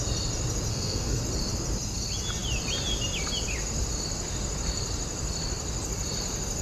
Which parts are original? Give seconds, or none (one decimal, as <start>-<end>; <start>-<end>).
0.0-0.7; 1.2-6.6